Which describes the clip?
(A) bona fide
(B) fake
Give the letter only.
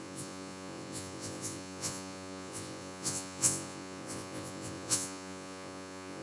B